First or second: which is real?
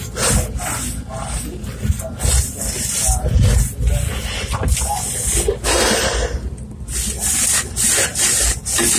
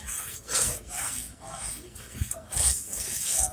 first